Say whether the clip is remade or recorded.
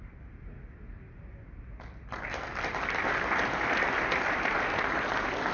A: recorded